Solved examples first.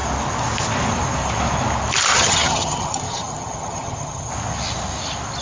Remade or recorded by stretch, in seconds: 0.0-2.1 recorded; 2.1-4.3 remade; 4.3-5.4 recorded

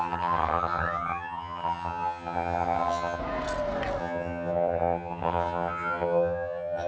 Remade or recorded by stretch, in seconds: 0.0-3.2 remade; 3.2-4.0 recorded; 4.0-6.9 remade

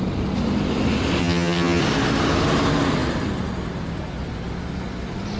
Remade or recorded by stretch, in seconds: 0.0-1.2 recorded; 1.2-1.8 remade; 1.8-5.4 recorded

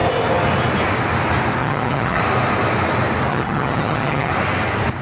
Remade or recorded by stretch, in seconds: 0.0-1.6 recorded; 1.6-2.2 remade; 2.2-3.3 recorded; 3.3-4.3 remade; 4.3-5.0 recorded

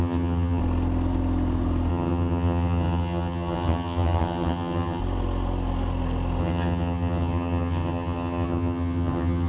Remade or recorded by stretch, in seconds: 0.0-0.6 remade; 0.6-1.9 recorded; 1.9-5.0 remade; 5.0-6.4 recorded; 6.4-9.5 remade

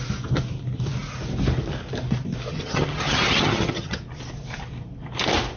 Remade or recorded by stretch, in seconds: 0.0-2.5 recorded; 2.5-4.0 remade; 4.0-5.6 recorded

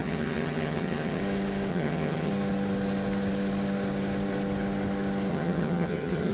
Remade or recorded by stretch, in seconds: 0.0-1.2 remade; 1.2-1.7 recorded; 1.7-2.3 remade; 2.3-5.3 recorded; 5.3-6.3 remade